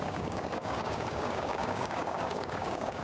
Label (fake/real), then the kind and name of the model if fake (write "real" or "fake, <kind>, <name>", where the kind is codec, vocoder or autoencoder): fake, codec, DAC